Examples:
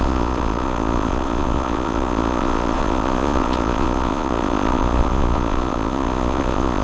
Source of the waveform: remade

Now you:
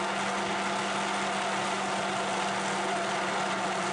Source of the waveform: recorded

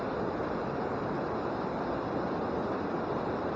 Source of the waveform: remade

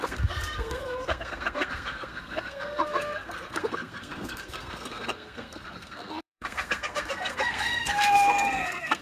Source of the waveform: remade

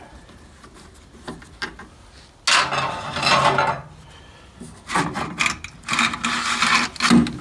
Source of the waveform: recorded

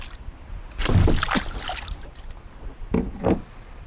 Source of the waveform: recorded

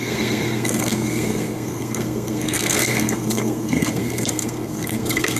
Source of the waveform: remade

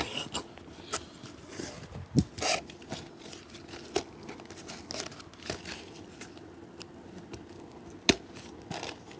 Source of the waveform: recorded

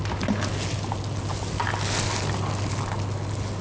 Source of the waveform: recorded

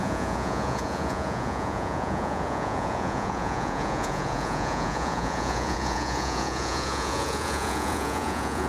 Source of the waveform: remade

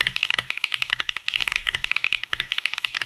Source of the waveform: remade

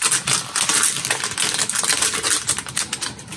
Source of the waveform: recorded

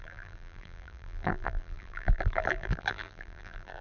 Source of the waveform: remade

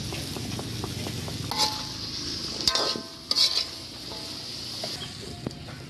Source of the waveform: recorded